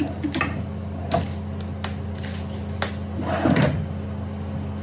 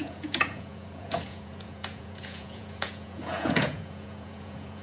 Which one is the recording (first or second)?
first